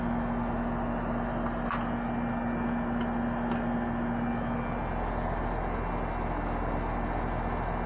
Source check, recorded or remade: recorded